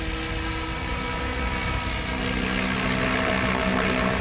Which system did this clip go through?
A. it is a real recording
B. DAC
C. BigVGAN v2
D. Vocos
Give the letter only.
A